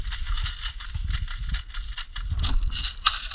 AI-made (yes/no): no